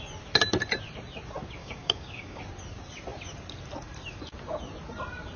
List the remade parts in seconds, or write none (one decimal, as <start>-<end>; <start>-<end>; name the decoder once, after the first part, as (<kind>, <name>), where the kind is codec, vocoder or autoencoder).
1.6-2.4 (codec, DAC)